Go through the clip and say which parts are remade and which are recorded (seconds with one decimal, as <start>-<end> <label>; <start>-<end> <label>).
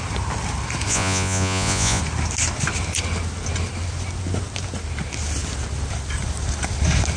0.0-0.9 recorded; 0.9-2.0 remade; 2.0-7.2 recorded